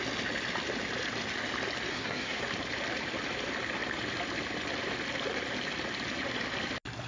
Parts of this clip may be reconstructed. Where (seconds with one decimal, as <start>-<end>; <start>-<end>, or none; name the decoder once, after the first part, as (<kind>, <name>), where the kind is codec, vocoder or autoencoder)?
1.9-2.4 (codec, SNAC)